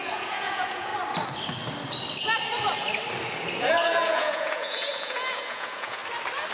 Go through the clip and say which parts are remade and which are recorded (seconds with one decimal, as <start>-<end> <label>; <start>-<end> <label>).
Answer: 0.0-0.9 remade; 0.9-3.6 recorded; 3.6-6.0 remade; 6.0-6.5 recorded